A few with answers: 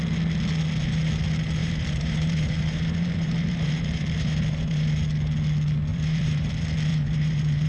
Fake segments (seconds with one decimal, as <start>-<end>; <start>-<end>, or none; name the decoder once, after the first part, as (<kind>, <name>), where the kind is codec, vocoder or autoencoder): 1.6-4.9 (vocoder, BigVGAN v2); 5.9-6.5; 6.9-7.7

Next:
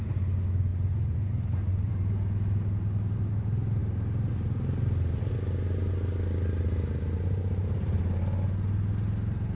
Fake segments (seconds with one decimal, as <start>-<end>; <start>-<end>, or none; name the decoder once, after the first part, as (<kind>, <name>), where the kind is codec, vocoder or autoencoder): none

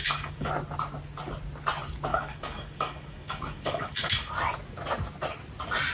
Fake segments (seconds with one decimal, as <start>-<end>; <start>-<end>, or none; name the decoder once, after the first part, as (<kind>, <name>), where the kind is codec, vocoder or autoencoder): 0.0-0.5 (codec, DAC); 2.1-4.3

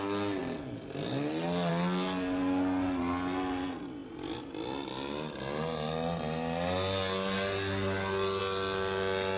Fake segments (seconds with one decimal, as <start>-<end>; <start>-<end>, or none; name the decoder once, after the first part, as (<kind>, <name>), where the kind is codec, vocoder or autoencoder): none

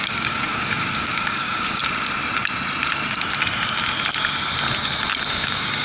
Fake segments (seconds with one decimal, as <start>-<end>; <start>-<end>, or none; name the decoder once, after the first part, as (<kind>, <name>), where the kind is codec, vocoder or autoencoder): 0.0-1.8 (codec, DAC); 5.3-5.8

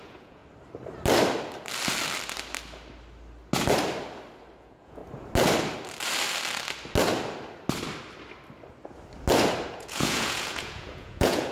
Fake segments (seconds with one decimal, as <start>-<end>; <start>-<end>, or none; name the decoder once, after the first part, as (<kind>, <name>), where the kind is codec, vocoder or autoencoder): 0.0-0.4 (vocoder, Vocos); 4.6-5.0; 9.7-11.5